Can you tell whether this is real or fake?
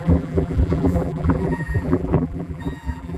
fake